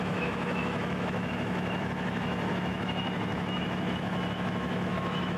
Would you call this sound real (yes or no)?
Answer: no